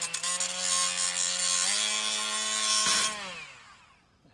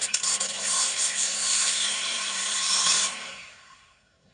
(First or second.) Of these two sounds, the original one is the first